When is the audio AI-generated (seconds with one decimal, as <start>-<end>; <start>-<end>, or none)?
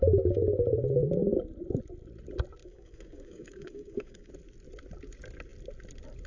2.6-4.3